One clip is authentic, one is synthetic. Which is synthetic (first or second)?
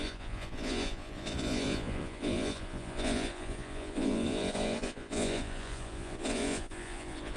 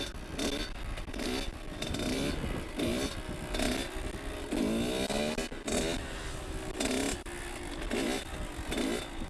first